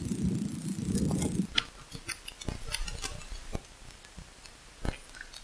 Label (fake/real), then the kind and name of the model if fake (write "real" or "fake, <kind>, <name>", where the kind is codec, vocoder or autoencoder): real